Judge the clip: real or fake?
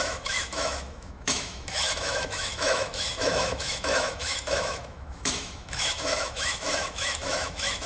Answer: fake